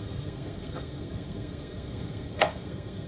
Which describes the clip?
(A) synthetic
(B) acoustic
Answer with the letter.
A